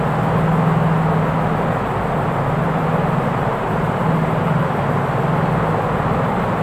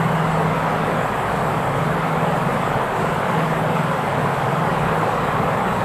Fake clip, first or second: second